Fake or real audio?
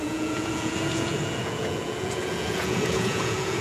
fake